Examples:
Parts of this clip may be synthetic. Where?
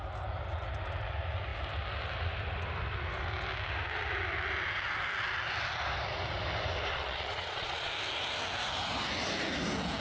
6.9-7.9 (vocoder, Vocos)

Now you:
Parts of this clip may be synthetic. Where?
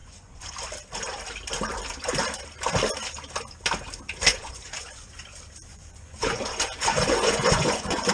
0.0-0.5 (vocoder, Vocos); 4.3-5.1; 5.7-8.1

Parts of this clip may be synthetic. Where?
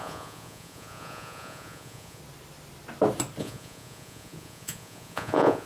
0.0-2.2 (vocoder, Vocos); 3.4-5.7